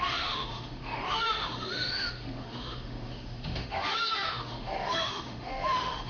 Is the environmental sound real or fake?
fake